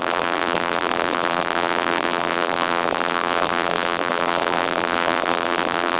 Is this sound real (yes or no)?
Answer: no